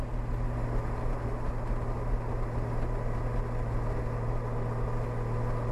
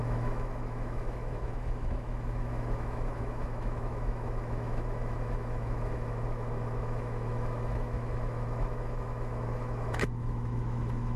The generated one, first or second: second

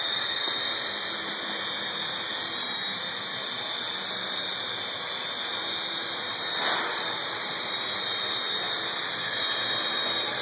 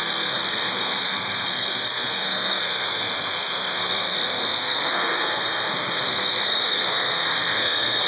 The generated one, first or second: second